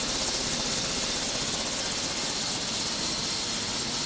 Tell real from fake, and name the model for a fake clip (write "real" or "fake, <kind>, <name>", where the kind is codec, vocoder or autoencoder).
real